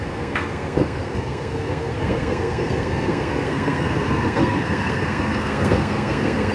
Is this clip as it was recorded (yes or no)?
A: no